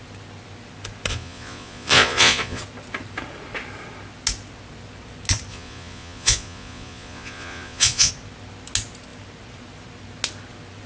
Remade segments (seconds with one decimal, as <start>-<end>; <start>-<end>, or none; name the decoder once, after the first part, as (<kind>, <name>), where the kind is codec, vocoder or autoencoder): 1.1-2.6 (vocoder, Vocos); 5.5-8.1